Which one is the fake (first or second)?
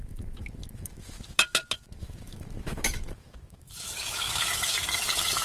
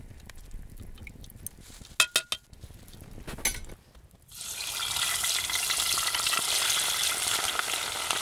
first